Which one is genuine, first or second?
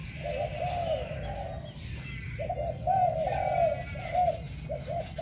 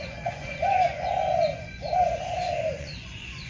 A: first